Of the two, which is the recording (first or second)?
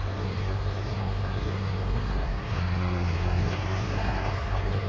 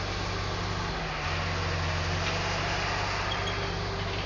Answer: second